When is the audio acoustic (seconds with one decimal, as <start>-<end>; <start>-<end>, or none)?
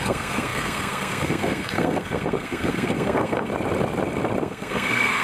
3.5-4.4